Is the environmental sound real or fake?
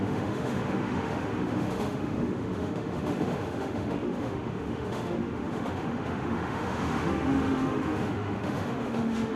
fake